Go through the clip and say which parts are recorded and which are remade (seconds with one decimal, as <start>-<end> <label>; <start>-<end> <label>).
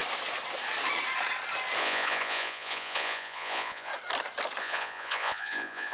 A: 0.0-1.8 recorded; 1.8-3.9 remade; 3.9-4.6 recorded; 4.6-5.9 remade